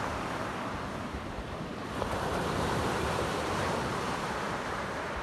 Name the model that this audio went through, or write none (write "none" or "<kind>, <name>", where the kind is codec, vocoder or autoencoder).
vocoder, BigVGAN v2